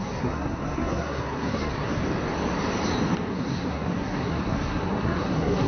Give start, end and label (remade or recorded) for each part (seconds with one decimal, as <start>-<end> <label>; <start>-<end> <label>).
0.0-2.0 remade; 2.0-3.3 recorded; 3.3-5.7 remade